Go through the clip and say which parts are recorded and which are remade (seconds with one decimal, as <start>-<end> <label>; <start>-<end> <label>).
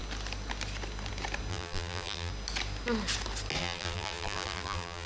0.0-1.5 recorded; 1.5-2.3 remade; 2.3-3.6 recorded; 3.6-5.1 remade